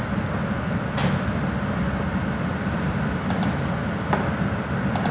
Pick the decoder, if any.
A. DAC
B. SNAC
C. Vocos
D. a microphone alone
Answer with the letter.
D